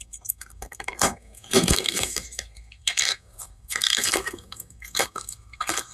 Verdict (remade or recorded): remade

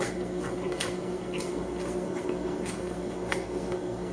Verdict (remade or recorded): remade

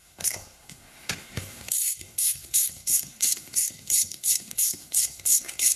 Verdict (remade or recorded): remade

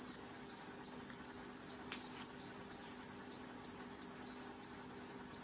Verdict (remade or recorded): recorded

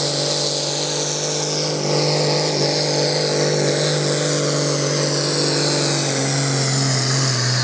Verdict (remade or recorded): recorded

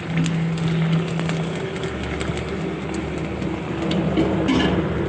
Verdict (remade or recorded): recorded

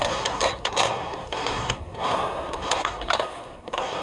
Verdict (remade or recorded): remade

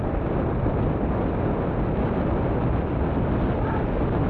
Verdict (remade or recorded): recorded